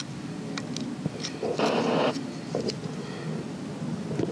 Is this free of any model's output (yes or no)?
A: yes